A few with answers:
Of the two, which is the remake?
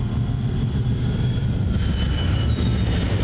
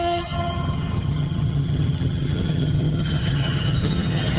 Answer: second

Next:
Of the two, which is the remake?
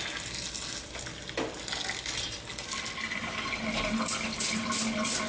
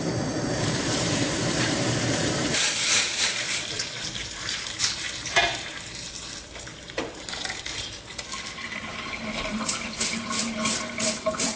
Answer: second